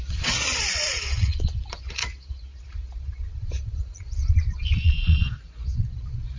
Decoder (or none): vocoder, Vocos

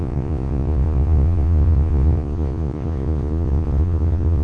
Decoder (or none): vocoder, Vocos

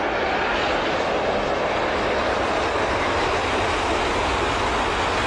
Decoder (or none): none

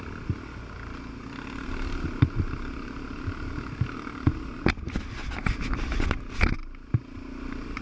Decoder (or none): none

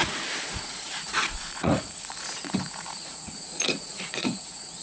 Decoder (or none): vocoder, Vocos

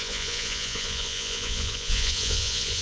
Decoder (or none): vocoder, Vocos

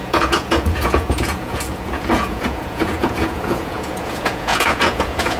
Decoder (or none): vocoder, Vocos